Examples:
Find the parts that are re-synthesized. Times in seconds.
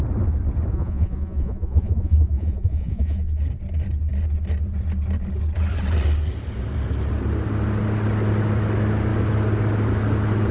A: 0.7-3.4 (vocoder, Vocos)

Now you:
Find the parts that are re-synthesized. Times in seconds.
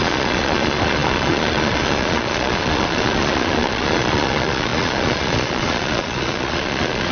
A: 0.0-7.1 (vocoder, Vocos)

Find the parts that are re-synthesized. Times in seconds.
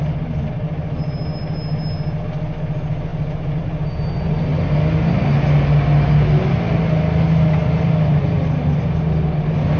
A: none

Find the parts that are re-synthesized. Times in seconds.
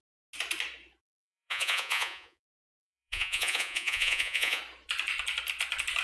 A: 1.0-4.6 (vocoder, Vocos)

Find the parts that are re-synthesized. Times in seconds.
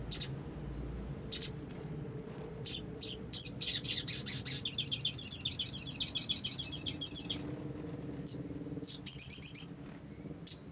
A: 1.4-4.1 (vocoder, Vocos)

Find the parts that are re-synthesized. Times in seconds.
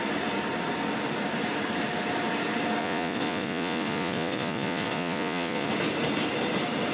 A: 2.8-5.7 (vocoder, Vocos)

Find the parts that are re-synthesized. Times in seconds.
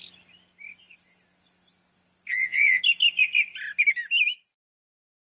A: 2.3-2.8 (vocoder, Vocos)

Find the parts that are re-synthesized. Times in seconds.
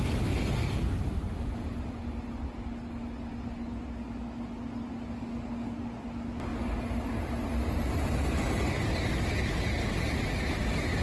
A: none